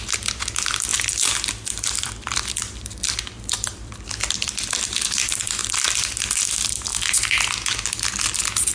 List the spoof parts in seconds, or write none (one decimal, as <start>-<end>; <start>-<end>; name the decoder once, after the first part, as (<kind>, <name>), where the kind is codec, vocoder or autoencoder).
0.9-4.6 (vocoder, BigVGAN v2); 5.6-6.2